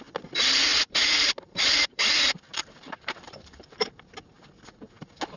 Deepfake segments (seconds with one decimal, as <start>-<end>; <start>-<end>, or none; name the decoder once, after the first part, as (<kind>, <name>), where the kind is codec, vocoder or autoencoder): 0.7-3.9 (vocoder, BigVGAN v2)